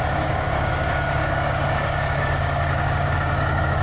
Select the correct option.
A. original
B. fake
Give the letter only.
B